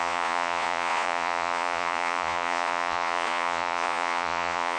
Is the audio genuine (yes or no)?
no